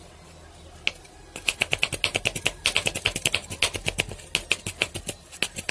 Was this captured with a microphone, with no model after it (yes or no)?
yes